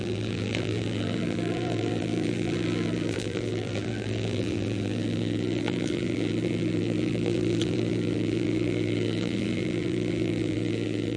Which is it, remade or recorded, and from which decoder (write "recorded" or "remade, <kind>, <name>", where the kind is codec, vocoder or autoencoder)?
remade, vocoder, BigVGAN v2